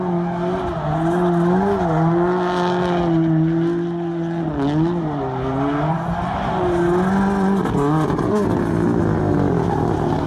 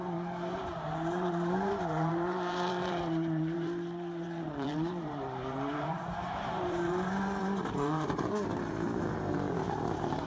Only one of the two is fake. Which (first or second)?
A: second